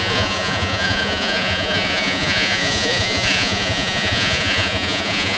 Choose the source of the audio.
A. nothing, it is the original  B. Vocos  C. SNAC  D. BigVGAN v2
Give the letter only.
B